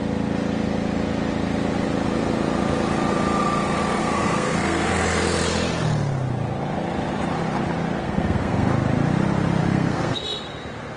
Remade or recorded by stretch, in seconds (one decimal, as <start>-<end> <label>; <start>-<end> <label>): 0.0-4.0 recorded; 4.0-4.9 remade; 4.9-8.0 recorded; 8.0-8.7 remade; 8.7-9.6 recorded; 9.6-10.2 remade; 10.2-11.0 recorded